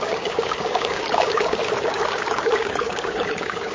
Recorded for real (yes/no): no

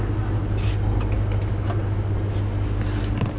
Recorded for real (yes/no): yes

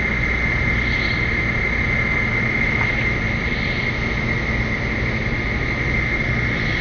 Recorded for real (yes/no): yes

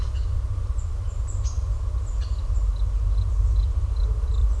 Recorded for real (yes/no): yes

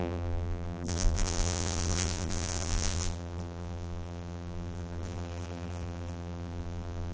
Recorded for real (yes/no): no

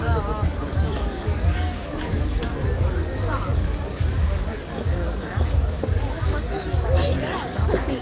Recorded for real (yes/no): no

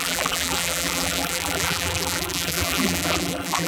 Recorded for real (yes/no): no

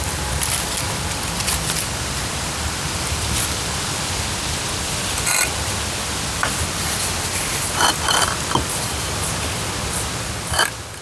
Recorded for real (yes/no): no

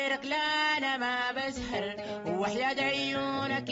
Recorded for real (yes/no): yes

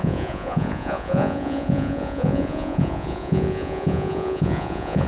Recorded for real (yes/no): no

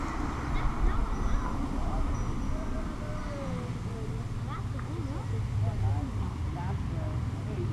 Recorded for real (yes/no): yes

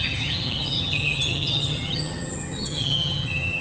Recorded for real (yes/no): no